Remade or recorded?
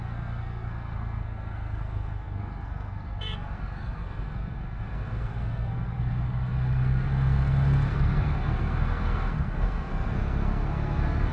remade